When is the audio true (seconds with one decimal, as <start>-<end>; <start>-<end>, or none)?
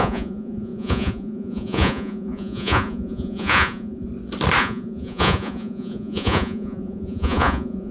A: 4.1-4.6